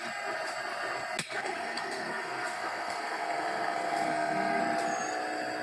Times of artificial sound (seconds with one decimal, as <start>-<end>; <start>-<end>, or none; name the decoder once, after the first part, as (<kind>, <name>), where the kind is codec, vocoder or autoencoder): 1.2-4.6 (codec, SNAC)

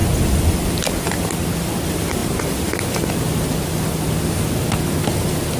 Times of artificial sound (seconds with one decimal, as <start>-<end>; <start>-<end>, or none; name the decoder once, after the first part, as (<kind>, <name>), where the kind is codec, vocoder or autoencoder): none

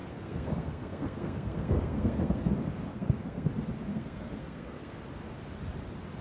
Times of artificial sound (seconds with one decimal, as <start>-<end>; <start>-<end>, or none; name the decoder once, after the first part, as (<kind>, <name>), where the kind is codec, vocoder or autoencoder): 0.0-2.5 (codec, SNAC); 2.9-3.5; 3.9-5.0

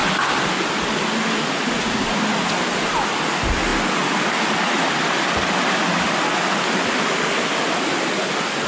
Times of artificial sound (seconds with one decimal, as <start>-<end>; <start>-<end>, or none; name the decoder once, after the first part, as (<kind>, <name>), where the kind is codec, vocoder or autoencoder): none

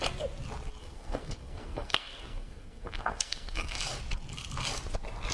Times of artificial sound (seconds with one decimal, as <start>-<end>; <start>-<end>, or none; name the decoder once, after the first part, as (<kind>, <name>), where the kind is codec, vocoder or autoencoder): 0.8-4.0 (codec, SNAC)

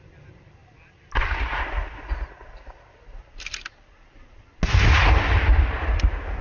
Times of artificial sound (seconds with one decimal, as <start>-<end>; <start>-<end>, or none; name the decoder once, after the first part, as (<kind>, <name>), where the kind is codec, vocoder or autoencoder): none

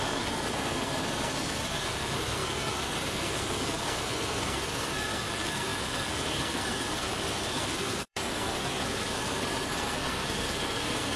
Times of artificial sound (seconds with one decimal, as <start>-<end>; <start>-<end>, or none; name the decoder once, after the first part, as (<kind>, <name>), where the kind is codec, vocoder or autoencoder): 0.0-11.2 (codec, SNAC)